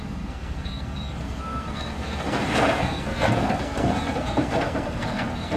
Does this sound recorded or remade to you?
remade